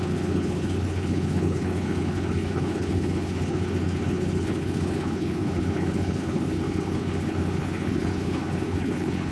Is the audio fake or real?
fake